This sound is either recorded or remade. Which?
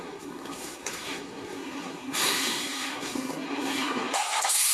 remade